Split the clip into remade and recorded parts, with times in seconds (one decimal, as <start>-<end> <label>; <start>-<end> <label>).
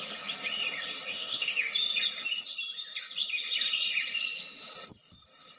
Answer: 0.0-1.1 recorded; 1.1-1.7 remade; 1.7-5.6 recorded